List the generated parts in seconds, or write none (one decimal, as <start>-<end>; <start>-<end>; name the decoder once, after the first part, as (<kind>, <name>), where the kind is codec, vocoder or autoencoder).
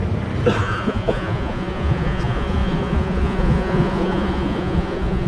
0.6-5.3 (vocoder, Vocos)